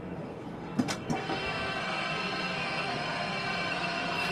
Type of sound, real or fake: fake